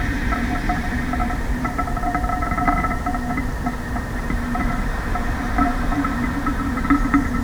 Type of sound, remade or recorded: remade